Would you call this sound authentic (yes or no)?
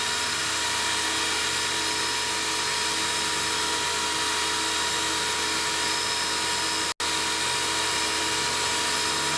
yes